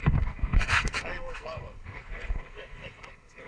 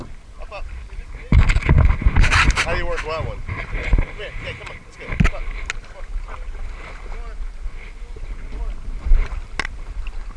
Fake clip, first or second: first